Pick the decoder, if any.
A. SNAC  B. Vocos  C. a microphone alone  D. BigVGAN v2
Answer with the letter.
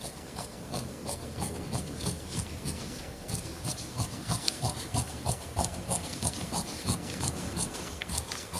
A